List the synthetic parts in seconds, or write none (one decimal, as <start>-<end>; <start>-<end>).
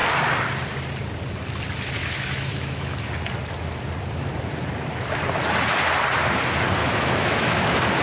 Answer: 2.0-3.1; 6.8-7.6